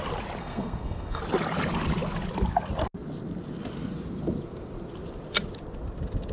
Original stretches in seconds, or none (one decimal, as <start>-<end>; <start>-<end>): 0.0-0.4; 1.2-6.3